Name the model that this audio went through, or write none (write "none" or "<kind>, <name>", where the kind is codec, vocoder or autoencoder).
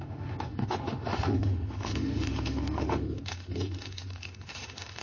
autoencoder, DAC-VAE